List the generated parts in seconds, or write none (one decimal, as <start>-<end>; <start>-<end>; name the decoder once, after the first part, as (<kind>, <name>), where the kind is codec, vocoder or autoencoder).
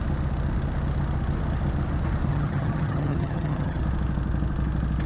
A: 2.3-3.8 (vocoder, HiFi-GAN)